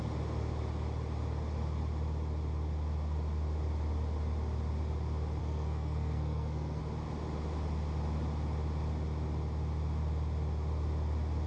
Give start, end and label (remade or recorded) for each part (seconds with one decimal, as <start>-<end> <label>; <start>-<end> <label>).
0.0-5.4 recorded; 5.4-6.8 remade; 6.8-11.5 recorded

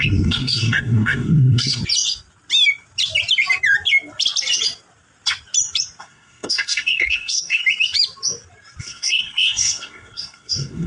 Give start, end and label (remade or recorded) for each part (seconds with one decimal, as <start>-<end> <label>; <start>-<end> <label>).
0.0-1.8 remade; 1.8-6.0 recorded; 6.0-7.6 remade; 7.6-8.8 recorded; 8.8-10.9 remade

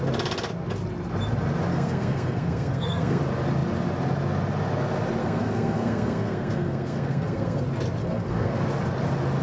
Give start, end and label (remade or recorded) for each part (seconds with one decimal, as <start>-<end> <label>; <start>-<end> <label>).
0.0-1.7 recorded; 1.7-3.2 remade; 3.2-5.2 recorded; 5.2-7.6 remade; 7.6-8.0 recorded; 8.0-8.6 remade; 8.6-9.4 recorded

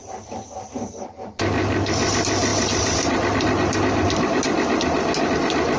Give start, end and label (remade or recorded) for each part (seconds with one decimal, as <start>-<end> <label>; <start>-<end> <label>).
0.0-5.8 recorded

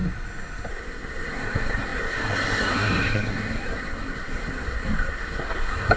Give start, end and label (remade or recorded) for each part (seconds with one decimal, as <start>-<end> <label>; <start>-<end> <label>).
0.0-0.7 recorded; 0.7-6.0 remade

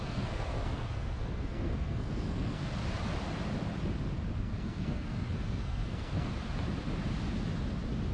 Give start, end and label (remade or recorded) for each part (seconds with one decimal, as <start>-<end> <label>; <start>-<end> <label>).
0.0-2.6 remade; 2.6-4.4 recorded; 4.4-6.3 remade; 6.3-8.1 recorded

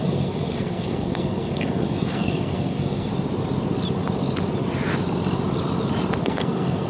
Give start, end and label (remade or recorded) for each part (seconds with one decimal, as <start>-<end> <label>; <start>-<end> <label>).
0.0-3.1 remade; 3.1-6.2 recorded; 6.2-6.9 remade

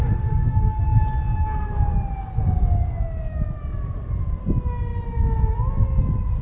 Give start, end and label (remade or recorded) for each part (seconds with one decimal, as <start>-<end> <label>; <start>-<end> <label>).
0.0-1.0 remade; 1.0-6.4 recorded